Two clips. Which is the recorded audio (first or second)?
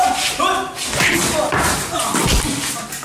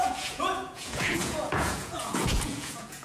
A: first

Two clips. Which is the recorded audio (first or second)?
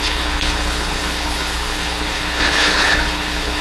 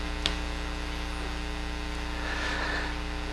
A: second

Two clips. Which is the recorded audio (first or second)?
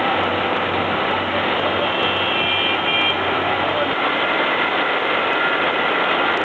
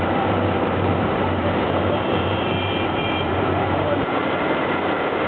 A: first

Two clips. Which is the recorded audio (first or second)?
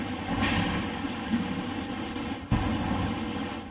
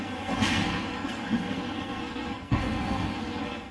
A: first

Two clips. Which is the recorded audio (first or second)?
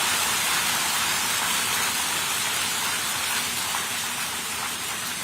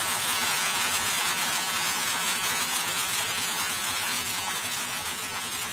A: first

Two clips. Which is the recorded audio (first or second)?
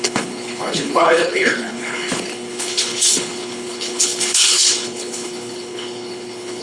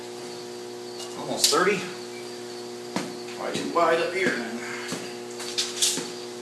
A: second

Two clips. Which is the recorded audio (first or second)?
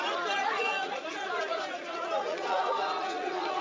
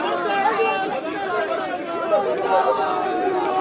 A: second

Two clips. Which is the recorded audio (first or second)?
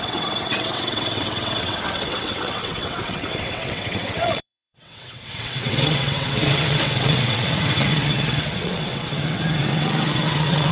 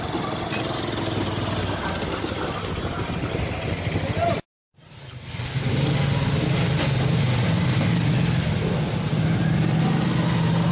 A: second